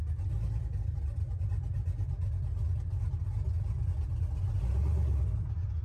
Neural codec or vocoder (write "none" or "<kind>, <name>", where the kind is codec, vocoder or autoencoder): none